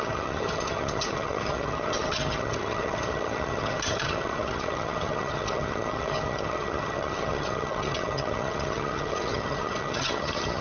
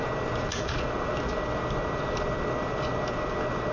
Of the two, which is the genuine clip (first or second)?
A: second